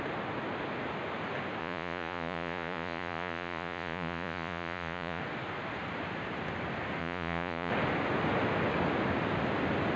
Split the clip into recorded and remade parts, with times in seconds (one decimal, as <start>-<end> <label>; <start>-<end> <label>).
0.0-1.6 recorded; 1.6-5.2 remade; 5.2-7.0 recorded; 7.0-7.7 remade; 7.7-10.0 recorded